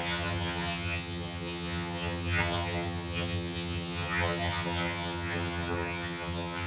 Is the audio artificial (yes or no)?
yes